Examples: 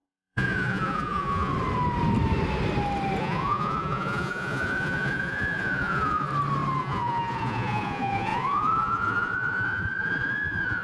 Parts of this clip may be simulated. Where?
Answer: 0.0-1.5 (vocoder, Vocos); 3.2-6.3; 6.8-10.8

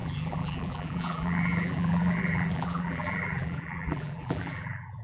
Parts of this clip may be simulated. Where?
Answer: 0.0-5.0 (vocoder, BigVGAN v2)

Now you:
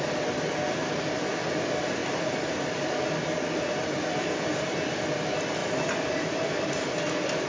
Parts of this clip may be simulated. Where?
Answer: 2.0-4.6 (vocoder, BigVGAN v2); 5.6-6.3

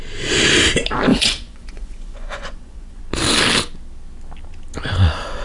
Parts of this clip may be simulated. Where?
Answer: 1.1-3.0 (vocoder, Vocos)